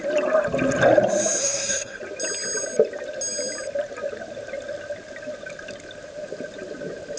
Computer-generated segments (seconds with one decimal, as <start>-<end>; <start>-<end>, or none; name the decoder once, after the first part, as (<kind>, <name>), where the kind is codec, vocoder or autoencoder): 1.4-2.0 (codec, SNAC)